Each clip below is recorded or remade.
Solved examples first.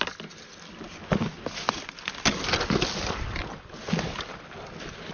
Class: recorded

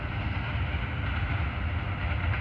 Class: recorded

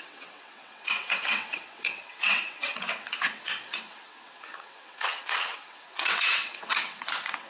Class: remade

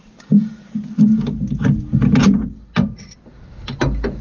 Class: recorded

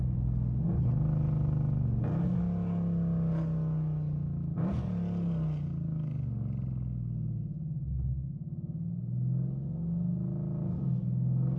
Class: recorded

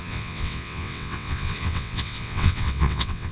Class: remade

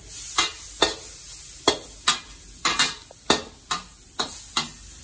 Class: recorded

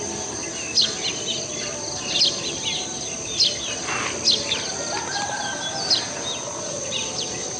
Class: recorded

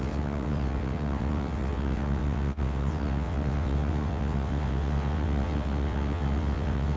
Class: remade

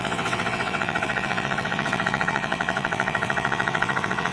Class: remade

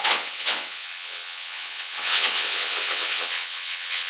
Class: remade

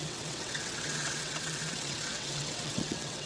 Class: remade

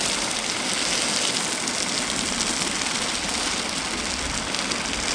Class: recorded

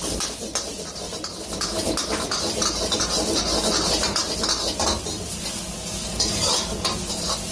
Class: recorded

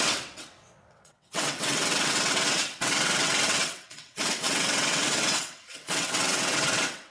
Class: remade